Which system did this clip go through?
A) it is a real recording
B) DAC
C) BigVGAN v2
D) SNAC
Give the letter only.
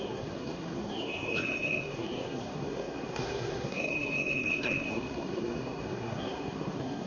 D